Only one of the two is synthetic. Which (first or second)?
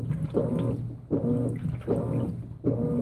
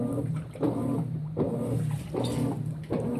second